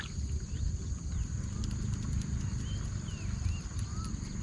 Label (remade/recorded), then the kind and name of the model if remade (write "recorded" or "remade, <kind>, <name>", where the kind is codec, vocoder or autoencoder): recorded